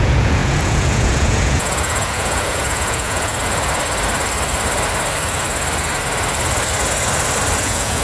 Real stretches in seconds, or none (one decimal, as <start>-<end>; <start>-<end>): 3.3-7.6